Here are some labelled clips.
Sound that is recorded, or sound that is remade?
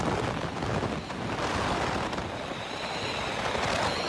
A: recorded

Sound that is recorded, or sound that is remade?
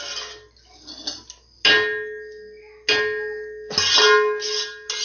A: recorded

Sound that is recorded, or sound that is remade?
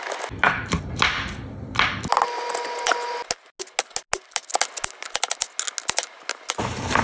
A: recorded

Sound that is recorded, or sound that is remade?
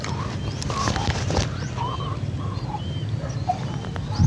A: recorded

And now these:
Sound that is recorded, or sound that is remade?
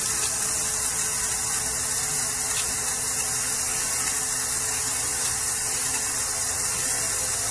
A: recorded